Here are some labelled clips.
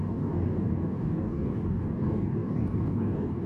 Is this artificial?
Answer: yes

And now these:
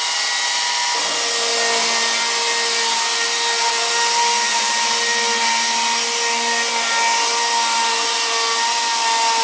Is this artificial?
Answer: no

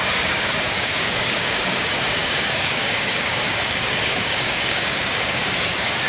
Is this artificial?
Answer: yes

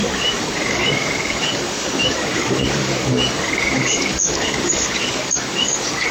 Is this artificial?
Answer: yes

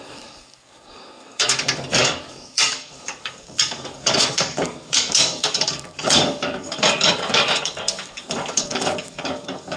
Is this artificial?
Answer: yes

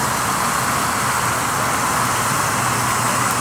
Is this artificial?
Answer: no